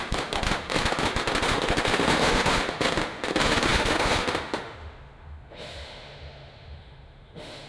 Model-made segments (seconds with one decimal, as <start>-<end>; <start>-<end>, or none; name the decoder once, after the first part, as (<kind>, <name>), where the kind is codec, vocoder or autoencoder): 0.0-7.7 (autoencoder, DAC-VAE)